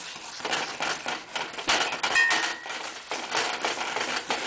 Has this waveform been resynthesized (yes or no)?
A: no